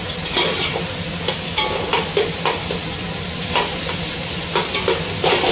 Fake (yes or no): no